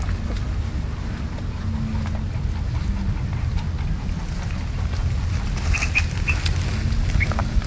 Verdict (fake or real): real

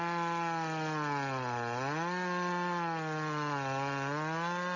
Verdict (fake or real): real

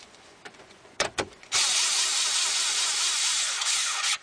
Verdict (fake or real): fake